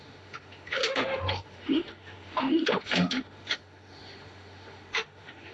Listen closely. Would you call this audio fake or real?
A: fake